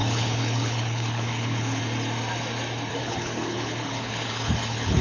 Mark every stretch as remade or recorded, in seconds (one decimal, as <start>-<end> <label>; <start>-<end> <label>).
0.0-1.8 remade; 1.8-2.9 recorded; 2.9-5.0 remade